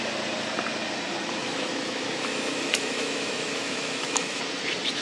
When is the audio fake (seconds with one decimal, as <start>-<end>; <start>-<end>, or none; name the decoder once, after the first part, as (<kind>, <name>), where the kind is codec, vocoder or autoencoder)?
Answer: 1.4-4.4 (autoencoder, DAC-VAE)